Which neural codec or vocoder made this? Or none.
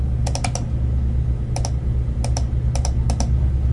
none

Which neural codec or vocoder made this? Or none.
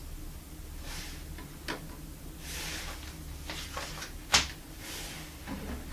none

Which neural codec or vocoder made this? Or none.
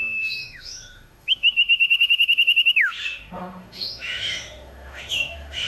autoencoder, DAC-VAE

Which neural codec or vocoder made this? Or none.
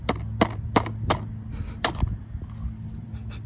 none